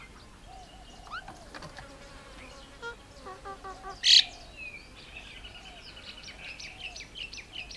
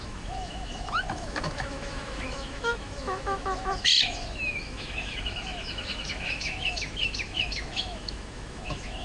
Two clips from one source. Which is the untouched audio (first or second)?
first